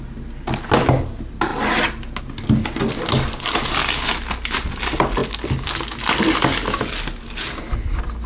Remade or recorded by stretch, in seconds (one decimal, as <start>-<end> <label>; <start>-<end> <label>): 0.0-8.3 recorded